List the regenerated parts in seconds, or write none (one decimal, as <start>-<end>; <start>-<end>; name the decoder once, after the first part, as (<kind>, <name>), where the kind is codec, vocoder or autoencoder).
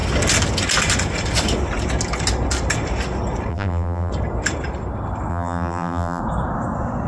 3.5-4.1 (vocoder, BigVGAN v2); 5.3-6.2